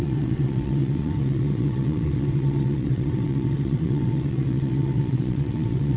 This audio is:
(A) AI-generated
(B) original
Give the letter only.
A